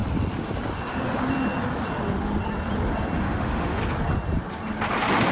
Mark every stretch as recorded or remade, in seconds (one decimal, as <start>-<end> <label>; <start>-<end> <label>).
0.0-3.2 recorded; 3.2-3.8 remade; 3.8-5.3 recorded